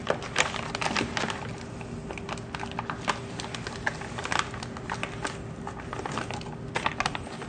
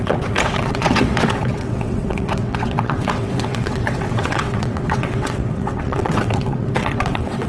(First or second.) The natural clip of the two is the first